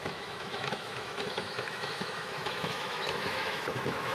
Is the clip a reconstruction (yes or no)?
yes